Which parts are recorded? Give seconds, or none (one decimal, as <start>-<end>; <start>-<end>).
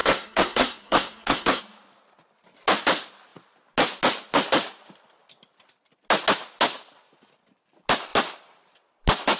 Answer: 1.6-9.4